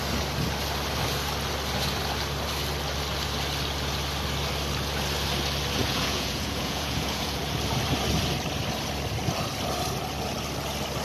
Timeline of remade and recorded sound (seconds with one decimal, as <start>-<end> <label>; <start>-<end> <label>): 0.0-5.8 recorded; 5.8-7.4 remade; 7.4-11.0 recorded